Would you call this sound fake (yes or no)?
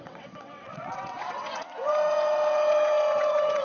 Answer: yes